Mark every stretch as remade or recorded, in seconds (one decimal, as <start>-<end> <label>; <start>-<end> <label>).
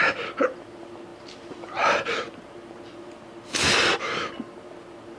0.0-1.1 recorded; 1.1-2.8 remade; 2.8-5.2 recorded